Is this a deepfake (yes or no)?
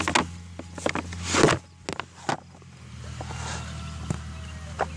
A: no